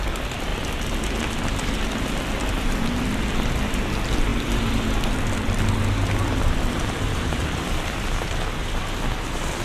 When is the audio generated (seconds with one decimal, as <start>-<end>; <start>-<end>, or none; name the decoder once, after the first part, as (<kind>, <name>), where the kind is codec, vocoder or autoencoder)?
0.0-9.6 (vocoder, BigVGAN v2)